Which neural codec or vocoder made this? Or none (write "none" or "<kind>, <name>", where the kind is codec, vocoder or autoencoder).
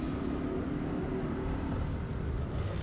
none